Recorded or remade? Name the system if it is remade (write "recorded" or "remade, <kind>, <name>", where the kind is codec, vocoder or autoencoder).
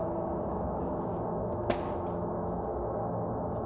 recorded